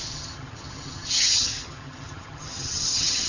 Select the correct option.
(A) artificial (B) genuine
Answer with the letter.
A